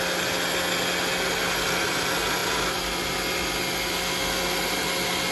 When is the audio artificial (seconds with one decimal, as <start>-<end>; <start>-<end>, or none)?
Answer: none